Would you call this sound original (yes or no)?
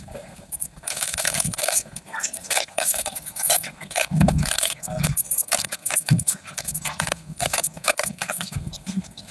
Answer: no